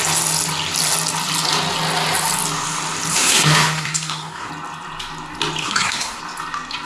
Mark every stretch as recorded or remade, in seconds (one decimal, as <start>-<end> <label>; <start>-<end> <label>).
0.0-3.1 recorded; 3.1-4.5 remade; 4.5-5.6 recorded; 5.6-6.2 remade; 6.2-6.9 recorded